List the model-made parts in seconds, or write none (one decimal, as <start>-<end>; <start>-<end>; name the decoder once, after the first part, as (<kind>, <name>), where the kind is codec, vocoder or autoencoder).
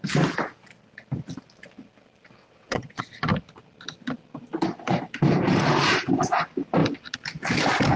2.4-3.0 (vocoder, WaveNeXt)